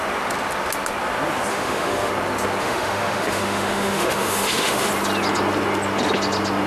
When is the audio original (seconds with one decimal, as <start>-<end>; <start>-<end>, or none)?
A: 0.0-1.5; 2.1-2.6; 4.9-6.7